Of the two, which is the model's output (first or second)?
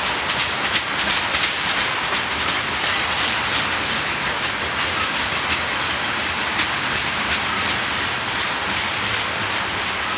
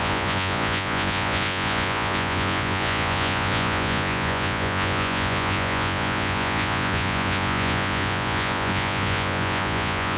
second